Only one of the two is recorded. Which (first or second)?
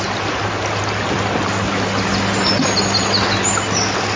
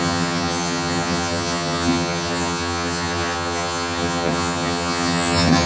first